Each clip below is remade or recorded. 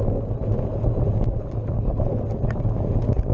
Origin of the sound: recorded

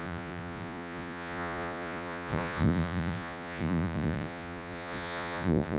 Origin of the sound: remade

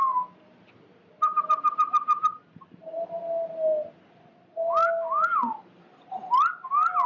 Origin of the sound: recorded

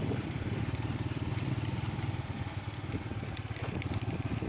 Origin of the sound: remade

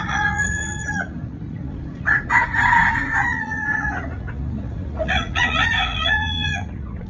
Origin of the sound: remade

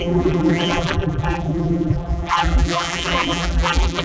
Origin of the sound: remade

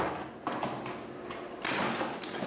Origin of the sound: recorded